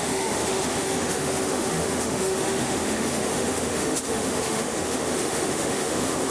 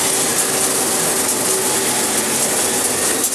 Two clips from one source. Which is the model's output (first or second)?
first